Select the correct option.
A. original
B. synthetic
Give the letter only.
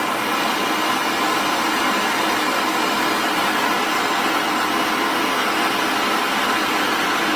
A